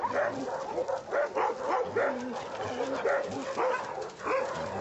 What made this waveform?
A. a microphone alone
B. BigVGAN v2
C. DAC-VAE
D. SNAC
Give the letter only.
A